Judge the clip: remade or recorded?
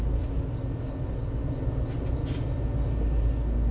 recorded